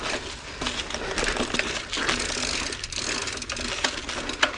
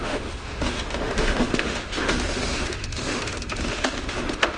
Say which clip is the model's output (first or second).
second